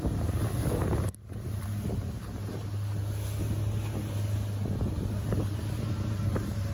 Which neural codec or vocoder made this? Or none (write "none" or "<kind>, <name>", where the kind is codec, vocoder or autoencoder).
none